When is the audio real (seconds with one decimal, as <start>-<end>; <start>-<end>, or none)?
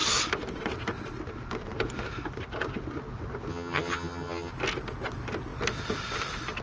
0.0-3.5; 4.5-6.6